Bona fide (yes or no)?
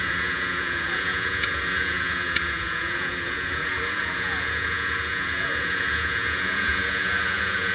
no